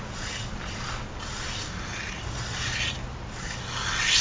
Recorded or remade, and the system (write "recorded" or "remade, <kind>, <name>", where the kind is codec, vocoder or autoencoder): recorded